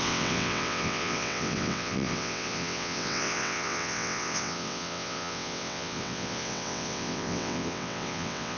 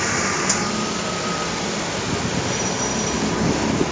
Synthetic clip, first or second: first